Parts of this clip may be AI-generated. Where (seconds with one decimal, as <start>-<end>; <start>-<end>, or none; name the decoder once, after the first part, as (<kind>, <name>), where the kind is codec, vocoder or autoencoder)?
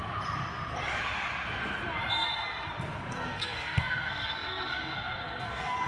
3.1-5.9 (codec, SNAC)